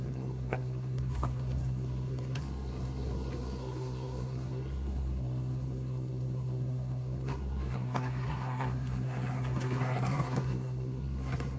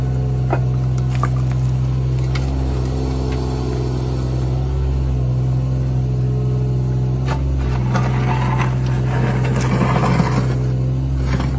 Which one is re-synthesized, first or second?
first